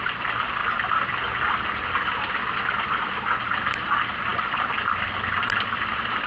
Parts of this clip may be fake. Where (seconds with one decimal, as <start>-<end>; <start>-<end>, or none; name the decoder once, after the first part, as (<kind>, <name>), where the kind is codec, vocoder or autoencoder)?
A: 0.0-0.6 (vocoder, BigVGAN v2); 1.6-6.3